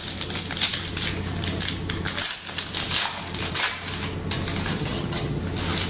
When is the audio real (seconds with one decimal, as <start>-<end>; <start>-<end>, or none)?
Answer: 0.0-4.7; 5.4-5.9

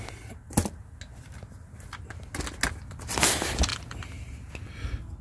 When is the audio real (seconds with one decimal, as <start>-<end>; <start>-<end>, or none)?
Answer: 0.0-5.2

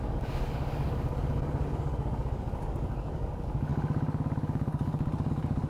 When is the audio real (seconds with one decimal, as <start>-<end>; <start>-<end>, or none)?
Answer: none

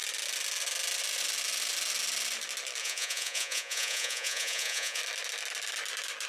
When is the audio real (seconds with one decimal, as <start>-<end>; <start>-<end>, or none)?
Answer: 0.0-2.8; 5.0-6.3